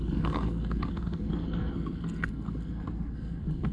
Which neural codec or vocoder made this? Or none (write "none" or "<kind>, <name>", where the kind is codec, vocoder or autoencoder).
codec, SNAC